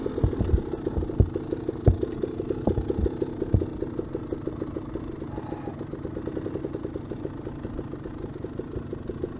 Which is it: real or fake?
real